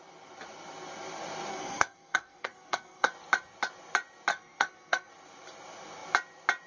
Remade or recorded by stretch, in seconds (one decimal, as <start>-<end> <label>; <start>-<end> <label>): 0.0-1.5 recorded; 1.5-3.1 remade; 3.1-4.3 recorded; 4.3-5.1 remade; 5.1-6.7 recorded